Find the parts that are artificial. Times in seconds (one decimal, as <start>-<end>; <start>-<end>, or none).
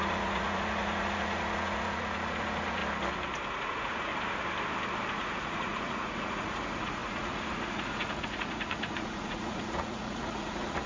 0.0-2.8; 3.5-4.1; 5.1-10.9